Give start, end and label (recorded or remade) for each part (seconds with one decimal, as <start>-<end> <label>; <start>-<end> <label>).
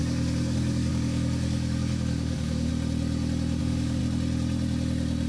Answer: 0.0-2.7 remade; 2.7-3.6 recorded; 3.6-4.0 remade; 4.0-5.3 recorded